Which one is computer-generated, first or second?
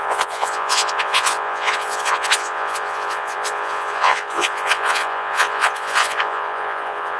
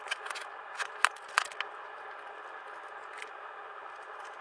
first